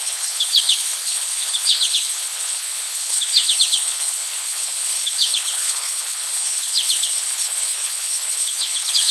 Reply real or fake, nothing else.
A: fake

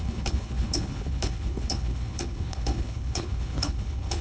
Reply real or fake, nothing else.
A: fake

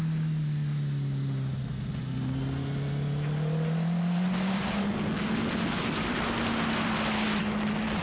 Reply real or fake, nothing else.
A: real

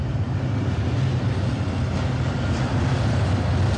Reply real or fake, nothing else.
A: real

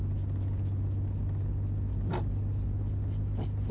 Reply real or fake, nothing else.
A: real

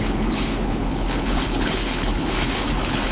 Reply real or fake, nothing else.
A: fake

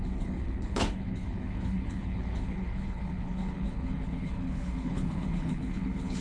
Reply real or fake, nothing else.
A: fake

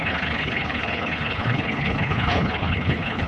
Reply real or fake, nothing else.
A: fake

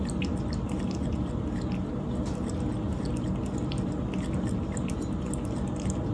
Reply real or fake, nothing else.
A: real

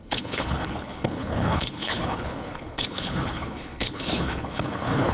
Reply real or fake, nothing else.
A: fake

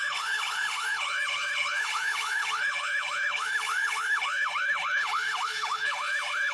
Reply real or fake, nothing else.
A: fake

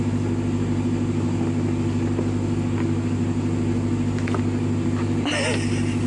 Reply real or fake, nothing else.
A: real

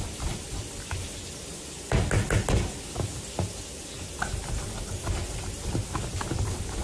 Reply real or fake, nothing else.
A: real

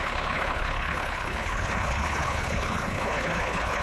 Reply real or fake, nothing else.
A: fake